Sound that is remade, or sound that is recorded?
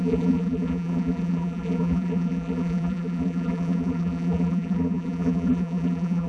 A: remade